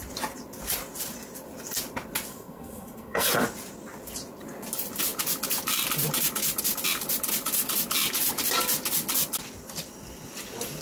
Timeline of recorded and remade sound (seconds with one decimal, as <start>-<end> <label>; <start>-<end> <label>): 0.0-2.3 recorded; 2.3-3.3 remade; 3.3-10.8 recorded